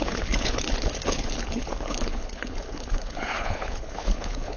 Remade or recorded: remade